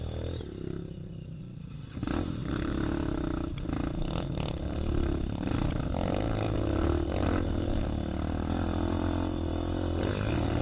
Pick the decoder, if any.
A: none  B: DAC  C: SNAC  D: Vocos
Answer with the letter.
A